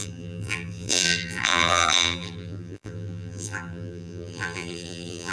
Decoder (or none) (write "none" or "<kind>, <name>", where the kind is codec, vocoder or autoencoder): vocoder, BigVGAN v2